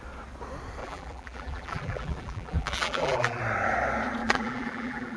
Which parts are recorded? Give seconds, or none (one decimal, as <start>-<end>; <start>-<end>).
0.0-0.8; 3.4-4.2